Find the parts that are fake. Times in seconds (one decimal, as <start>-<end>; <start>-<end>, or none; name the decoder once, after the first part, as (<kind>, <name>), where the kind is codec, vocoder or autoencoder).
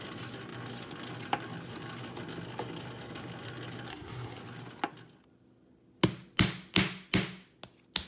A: 3.9-4.4 (codec, SNAC)